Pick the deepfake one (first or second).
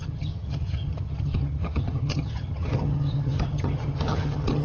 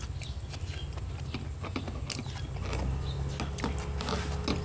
first